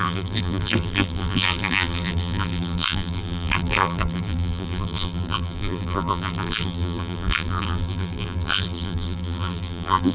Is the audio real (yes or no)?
no